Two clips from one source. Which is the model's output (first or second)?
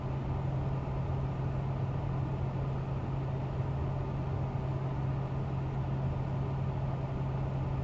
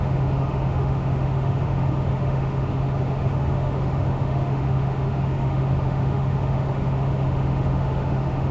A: second